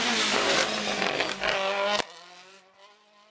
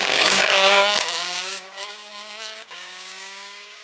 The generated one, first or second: second